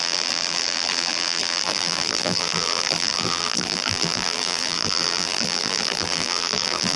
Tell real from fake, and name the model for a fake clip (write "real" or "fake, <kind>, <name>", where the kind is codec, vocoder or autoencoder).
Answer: fake, vocoder, BigVGAN v2